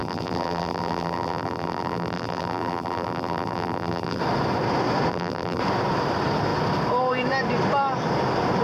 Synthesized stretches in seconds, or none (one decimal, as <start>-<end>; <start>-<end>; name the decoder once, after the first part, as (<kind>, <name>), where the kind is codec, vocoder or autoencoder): 0.0-4.2 (vocoder, BigVGAN v2); 5.1-5.6

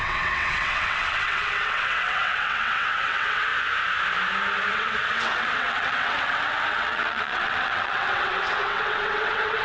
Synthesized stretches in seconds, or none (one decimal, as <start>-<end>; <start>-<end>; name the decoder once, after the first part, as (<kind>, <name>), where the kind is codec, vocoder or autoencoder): 0.0-3.5 (vocoder, WaveNeXt); 4.7-9.6

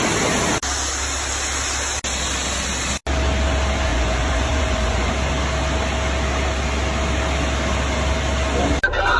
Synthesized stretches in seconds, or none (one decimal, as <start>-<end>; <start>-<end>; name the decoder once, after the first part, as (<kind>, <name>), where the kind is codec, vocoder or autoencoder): 3.9-5.1 (vocoder, Vocos)

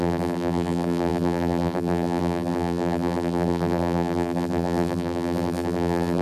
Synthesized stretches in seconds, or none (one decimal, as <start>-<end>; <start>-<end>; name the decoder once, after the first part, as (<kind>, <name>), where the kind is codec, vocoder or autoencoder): 0.0-6.2 (vocoder, BigVGAN v2)

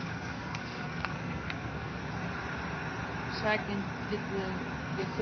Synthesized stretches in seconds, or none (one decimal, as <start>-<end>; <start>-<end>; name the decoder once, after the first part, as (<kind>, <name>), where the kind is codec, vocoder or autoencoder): 0.0-2.0 (codec, SNAC); 4.8-5.2